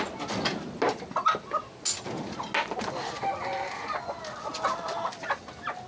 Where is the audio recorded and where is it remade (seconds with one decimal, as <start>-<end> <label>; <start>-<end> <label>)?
0.0-5.9 recorded